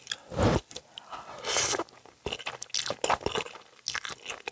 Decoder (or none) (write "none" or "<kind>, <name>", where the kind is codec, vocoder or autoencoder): none